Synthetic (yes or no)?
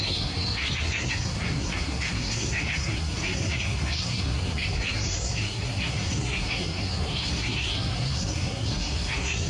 yes